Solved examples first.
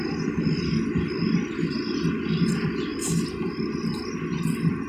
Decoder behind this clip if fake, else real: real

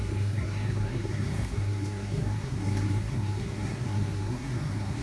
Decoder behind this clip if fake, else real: fake, codec, SNAC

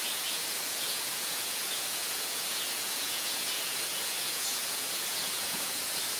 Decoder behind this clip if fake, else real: fake, vocoder, Vocos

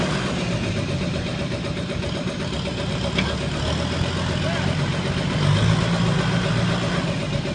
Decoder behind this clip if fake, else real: real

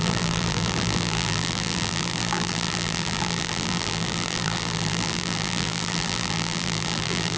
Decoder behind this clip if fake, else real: fake, vocoder, BigVGAN v2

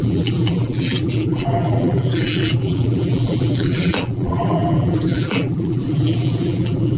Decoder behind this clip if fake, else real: fake, vocoder, BigVGAN v2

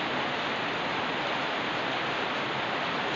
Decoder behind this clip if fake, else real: real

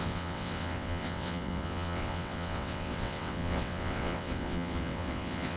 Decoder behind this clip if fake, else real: fake, vocoder, WaveNeXt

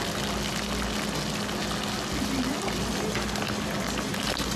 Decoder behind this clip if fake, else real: real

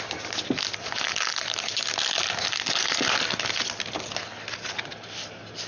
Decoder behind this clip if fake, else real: real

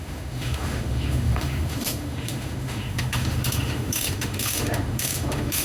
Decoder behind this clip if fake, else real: fake, autoencoder, DAC-VAE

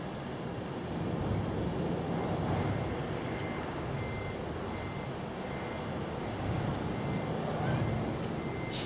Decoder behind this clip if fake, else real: real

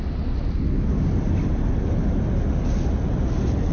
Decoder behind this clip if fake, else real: real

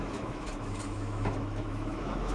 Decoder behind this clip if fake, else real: fake, autoencoder, DAC-VAE